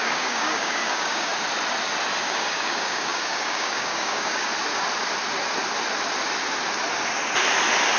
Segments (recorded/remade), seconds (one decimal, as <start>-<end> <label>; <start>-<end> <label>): 0.0-1.3 remade; 1.3-2.2 recorded; 2.2-4.5 remade; 4.5-8.0 recorded